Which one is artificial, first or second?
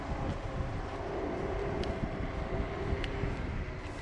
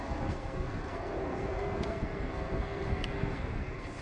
second